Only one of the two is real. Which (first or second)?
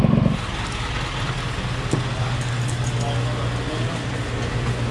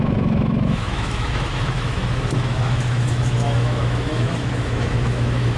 first